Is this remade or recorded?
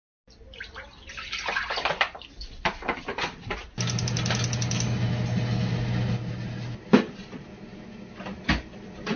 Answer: recorded